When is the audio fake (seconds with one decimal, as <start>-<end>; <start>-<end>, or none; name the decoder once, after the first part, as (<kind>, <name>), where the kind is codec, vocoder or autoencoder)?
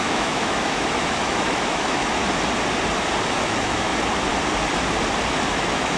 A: 0.0-2.2 (autoencoder, DAC-VAE); 3.3-3.9; 5.5-6.0